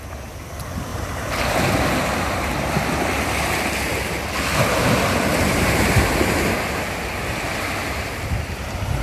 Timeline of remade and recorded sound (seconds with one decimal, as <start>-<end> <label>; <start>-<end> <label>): 0.0-0.9 recorded; 0.9-2.5 remade; 2.5-9.0 recorded